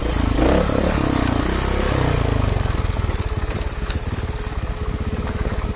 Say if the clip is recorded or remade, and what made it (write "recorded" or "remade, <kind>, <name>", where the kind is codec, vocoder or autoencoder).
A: recorded